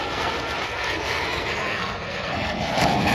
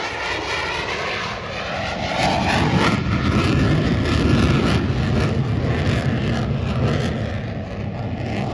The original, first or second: second